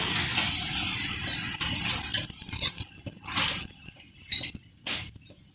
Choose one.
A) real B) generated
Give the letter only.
A